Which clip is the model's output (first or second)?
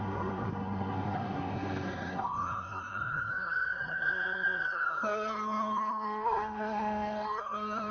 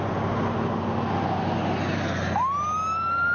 first